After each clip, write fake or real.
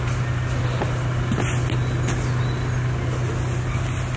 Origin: real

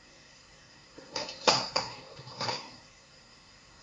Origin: fake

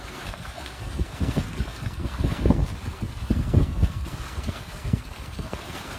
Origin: fake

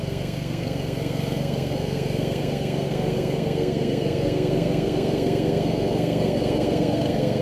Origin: fake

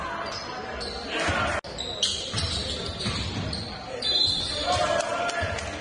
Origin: real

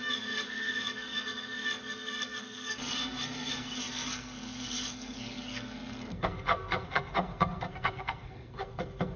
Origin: fake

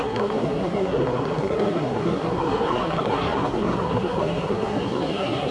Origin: fake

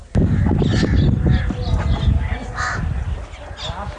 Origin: real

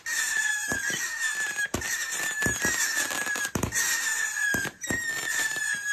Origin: real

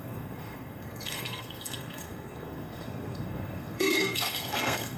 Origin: fake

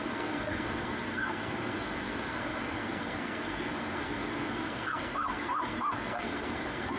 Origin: fake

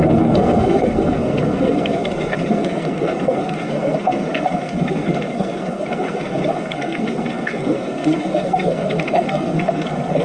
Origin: fake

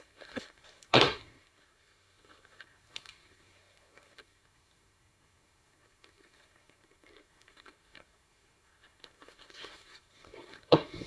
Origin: fake